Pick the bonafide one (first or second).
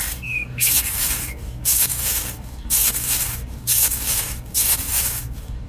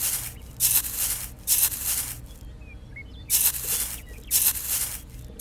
second